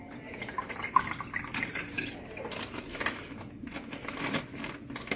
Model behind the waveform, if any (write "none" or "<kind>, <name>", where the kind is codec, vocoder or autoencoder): none